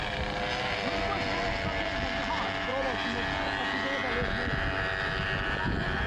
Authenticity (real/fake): real